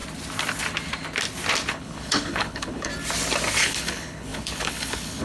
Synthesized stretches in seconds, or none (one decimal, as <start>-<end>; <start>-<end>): 1.7-2.9; 3.6-5.2

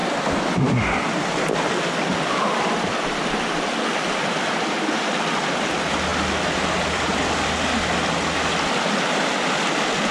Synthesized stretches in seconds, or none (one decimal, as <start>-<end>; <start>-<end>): none

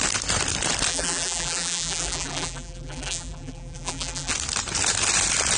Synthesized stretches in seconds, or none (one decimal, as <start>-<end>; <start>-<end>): 0.9-4.3

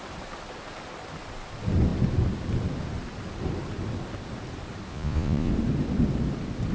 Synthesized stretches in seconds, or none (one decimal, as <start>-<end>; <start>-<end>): 4.9-5.5

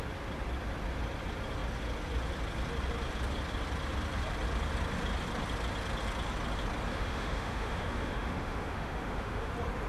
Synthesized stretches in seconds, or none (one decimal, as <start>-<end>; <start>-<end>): 6.9-9.5

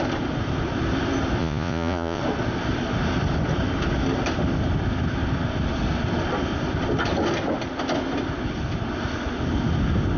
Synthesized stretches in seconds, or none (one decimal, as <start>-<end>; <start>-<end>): 1.4-2.2

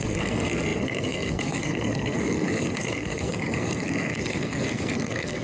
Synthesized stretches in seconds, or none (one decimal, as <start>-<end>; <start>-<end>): 0.0-5.4

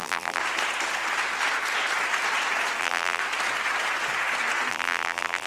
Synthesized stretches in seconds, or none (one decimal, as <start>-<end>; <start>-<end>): 0.0-0.4; 2.8-3.2; 4.7-5.5